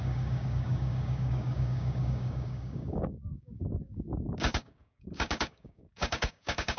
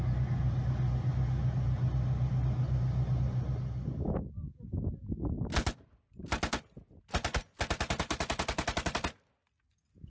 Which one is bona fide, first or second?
second